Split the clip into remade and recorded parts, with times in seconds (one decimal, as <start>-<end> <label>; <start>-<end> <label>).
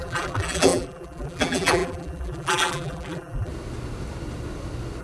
0.0-3.5 remade; 3.5-5.0 recorded